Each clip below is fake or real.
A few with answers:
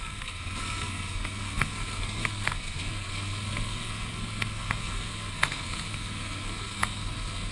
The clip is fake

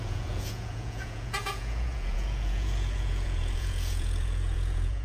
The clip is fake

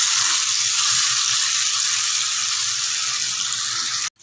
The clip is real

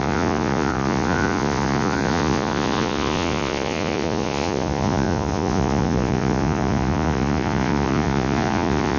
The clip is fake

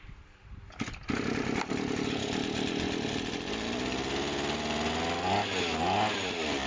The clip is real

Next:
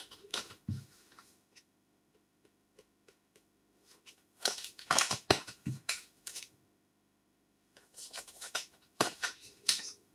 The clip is fake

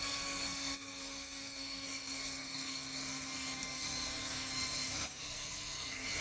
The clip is fake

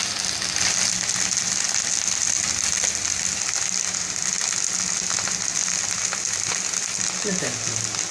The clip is real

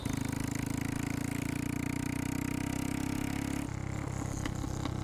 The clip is real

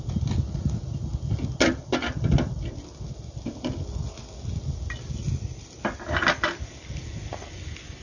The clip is real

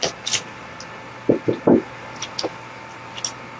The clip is real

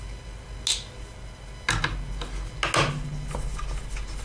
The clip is real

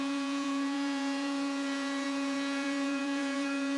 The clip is fake